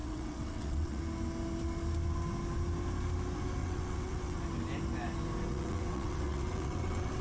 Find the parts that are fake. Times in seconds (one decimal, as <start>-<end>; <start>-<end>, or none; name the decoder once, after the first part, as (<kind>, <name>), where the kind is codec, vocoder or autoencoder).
0.0-1.0 (vocoder, WaveNeXt); 3.6-4.4; 5.5-7.2

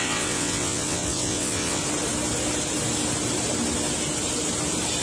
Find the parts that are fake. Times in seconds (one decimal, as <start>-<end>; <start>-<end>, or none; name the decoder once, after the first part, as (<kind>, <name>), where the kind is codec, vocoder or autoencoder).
0.0-1.8 (vocoder, WaveNeXt)

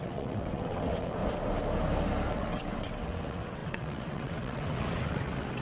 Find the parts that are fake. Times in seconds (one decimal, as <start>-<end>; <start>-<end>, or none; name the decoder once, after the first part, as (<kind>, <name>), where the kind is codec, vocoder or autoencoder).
0.0-1.2 (vocoder, WaveNeXt); 2.3-5.6